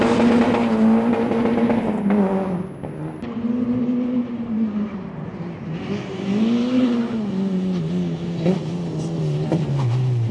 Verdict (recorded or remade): recorded